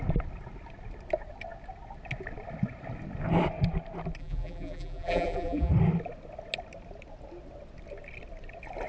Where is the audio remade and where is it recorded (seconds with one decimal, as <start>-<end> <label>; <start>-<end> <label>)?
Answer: 0.0-4.2 recorded; 4.2-5.7 remade; 5.7-8.9 recorded